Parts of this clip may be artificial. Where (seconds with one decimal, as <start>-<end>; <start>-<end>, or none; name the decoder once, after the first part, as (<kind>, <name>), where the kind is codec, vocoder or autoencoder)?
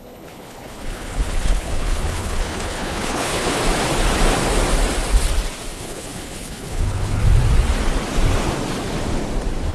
0.0-3.6 (codec, HILCodec); 5.7-7.2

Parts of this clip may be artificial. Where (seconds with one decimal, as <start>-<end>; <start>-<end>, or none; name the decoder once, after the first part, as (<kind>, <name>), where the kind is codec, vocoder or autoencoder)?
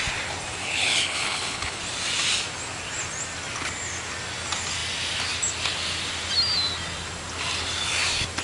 0.6-1.8 (codec, HILCodec)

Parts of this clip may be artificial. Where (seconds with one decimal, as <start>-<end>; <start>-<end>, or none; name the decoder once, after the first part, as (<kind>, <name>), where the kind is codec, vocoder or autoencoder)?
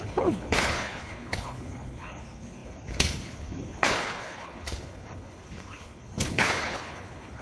0.0-7.4 (codec, HILCodec)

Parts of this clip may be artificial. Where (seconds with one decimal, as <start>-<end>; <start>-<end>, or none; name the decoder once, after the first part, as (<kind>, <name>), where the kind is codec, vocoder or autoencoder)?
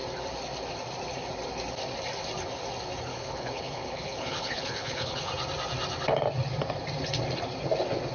3.1-5.3 (codec, HILCodec)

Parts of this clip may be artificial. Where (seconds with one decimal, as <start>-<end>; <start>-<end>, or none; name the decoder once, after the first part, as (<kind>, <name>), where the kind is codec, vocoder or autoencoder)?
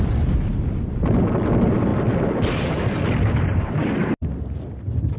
none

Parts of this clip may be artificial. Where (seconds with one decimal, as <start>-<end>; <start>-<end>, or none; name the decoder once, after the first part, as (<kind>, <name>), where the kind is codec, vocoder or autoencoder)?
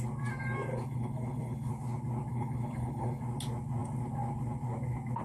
0.7-1.7 (codec, HILCodec); 2.3-3.2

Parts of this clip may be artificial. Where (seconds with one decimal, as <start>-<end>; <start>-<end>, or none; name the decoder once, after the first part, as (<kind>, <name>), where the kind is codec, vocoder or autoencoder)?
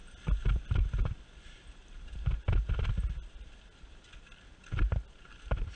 none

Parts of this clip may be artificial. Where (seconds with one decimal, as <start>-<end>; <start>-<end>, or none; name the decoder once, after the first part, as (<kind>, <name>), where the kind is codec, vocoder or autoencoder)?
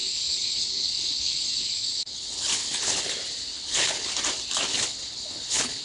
0.0-3.0 (codec, HILCodec); 3.5-4.1; 4.7-5.8